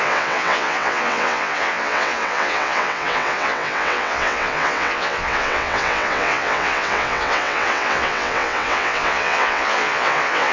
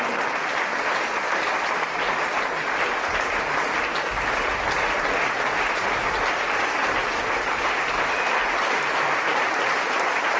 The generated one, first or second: first